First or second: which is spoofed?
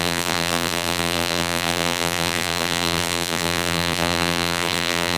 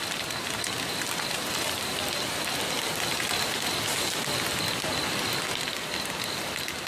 first